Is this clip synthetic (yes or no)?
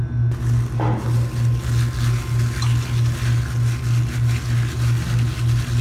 no